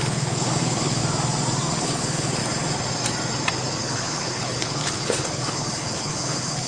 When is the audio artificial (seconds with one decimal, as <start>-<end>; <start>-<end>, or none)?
0.0-1.0; 1.8-2.4; 3.8-6.7